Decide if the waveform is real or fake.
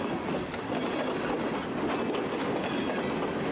real